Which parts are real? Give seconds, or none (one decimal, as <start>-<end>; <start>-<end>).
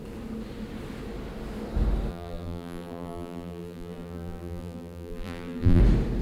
0.0-2.1; 5.8-6.2